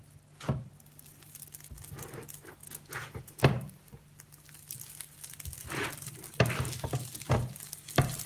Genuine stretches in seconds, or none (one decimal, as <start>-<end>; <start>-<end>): 0.0-2.6; 3.4-8.3